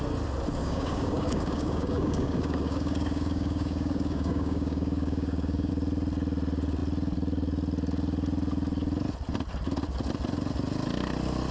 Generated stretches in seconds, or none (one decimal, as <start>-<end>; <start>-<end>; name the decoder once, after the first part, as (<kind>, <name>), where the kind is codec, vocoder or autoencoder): 0.6-5.7 (codec, DAC)